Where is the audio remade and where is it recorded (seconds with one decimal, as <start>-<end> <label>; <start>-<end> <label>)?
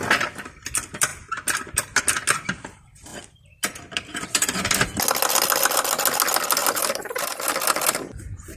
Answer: 0.0-1.1 recorded; 1.1-2.0 remade; 2.0-3.1 recorded; 3.1-4.6 remade; 4.6-6.6 recorded; 6.6-7.5 remade; 7.5-8.6 recorded